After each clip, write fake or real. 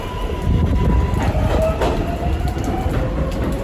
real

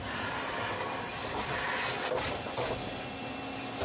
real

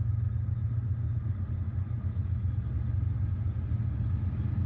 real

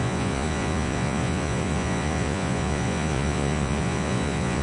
fake